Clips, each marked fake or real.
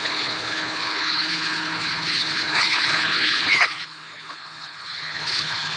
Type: fake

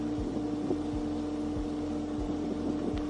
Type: real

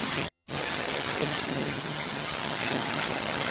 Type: fake